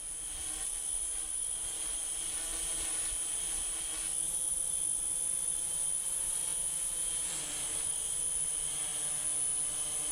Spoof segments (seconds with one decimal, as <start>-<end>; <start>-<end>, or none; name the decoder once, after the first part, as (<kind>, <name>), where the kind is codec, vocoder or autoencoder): 6.5-7.3 (vocoder, Vocos)